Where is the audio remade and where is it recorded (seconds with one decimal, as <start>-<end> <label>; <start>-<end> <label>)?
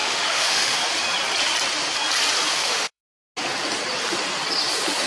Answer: 0.0-0.8 remade; 0.8-2.5 recorded; 2.5-3.0 remade; 3.0-5.1 recorded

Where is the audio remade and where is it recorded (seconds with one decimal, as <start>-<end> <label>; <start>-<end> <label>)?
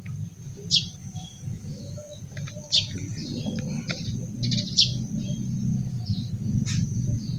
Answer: 0.0-1.0 recorded; 1.0-2.2 remade; 2.2-7.4 recorded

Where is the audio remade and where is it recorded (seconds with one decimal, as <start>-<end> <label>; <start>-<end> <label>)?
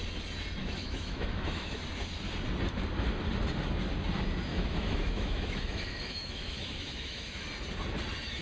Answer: 0.0-0.6 recorded; 0.6-1.8 remade; 1.8-4.5 recorded; 4.5-7.5 remade; 7.5-8.4 recorded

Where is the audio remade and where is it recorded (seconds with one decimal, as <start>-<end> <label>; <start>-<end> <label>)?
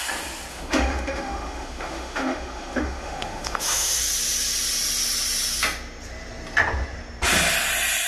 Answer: 0.0-0.5 recorded; 0.5-4.0 remade; 4.0-8.1 recorded